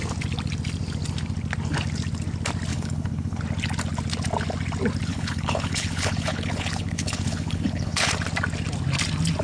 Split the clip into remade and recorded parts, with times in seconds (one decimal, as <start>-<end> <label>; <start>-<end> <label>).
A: 0.0-2.7 recorded; 2.7-3.4 remade; 3.4-5.1 recorded; 5.1-8.1 remade; 8.1-9.4 recorded